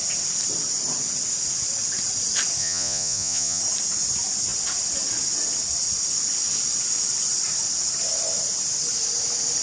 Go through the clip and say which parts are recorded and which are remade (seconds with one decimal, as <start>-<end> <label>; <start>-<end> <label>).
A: 0.0-2.6 recorded; 2.6-3.6 remade; 3.6-9.6 recorded